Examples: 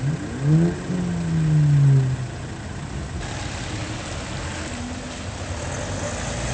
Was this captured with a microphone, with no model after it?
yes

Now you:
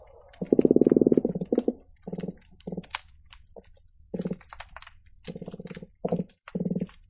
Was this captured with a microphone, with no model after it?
yes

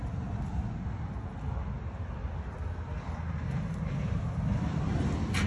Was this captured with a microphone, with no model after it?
yes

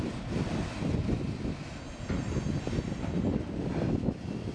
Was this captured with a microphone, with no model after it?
yes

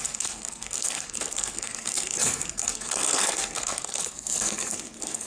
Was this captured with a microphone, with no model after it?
no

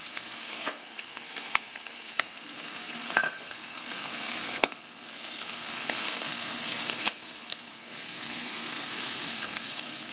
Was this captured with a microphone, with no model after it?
no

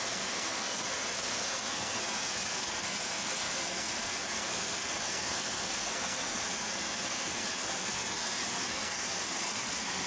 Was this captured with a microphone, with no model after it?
no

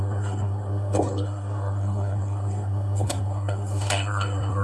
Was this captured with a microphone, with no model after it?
no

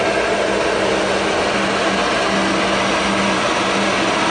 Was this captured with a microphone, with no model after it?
yes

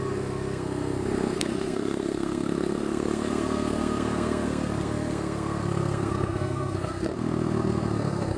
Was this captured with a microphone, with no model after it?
no